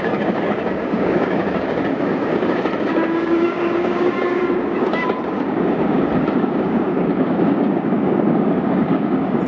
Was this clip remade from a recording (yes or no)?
yes